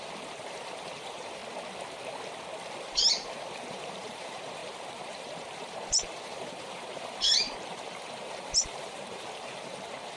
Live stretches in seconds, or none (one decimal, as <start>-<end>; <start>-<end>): 1.4-2.8